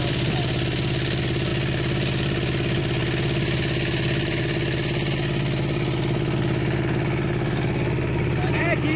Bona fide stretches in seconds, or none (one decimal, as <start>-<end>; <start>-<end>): 0.0-9.0